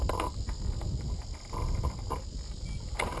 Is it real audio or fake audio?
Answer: real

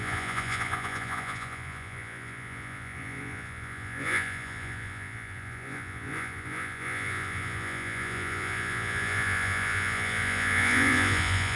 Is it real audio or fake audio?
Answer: fake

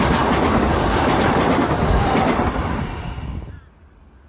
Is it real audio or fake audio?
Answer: real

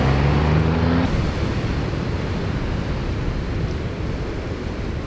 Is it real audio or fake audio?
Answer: real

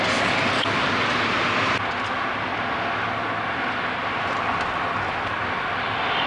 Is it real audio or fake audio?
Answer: real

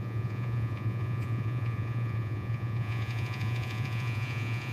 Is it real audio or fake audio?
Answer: fake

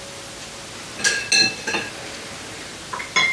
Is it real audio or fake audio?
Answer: real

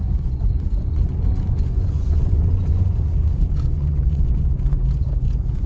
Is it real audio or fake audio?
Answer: fake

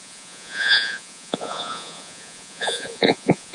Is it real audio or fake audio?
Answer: fake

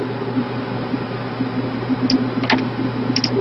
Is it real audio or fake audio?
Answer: real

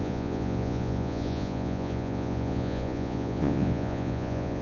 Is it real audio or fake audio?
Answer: fake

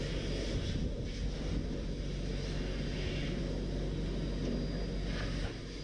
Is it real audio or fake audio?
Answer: real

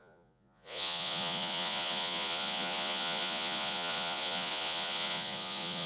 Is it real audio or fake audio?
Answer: fake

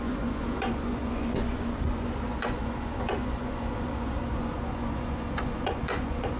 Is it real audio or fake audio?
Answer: fake